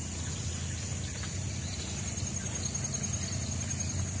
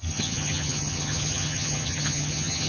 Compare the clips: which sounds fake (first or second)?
second